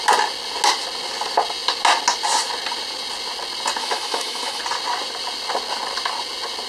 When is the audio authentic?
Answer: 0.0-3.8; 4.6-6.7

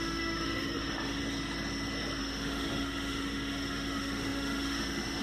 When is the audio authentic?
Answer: 1.2-2.2

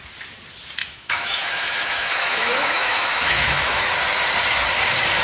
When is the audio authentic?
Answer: 0.0-0.8; 3.9-5.2

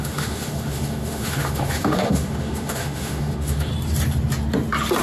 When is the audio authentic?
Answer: 3.7-5.0

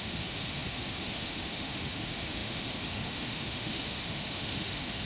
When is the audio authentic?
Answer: none

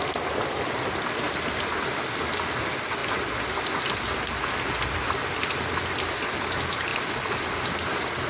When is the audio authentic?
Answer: 0.0-8.3